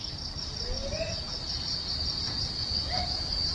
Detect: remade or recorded remade